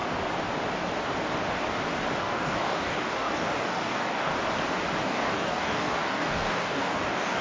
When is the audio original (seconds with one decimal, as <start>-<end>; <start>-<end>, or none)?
0.0-2.2; 4.3-5.0